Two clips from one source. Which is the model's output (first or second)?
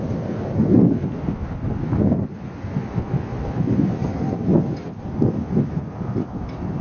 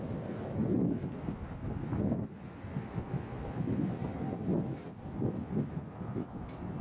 first